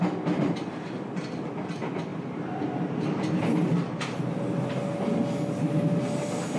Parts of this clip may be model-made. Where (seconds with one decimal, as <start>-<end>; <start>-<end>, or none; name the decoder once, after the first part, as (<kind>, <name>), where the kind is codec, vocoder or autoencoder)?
none